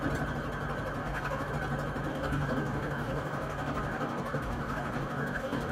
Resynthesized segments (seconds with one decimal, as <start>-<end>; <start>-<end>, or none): 1.0-1.5; 2.1-5.7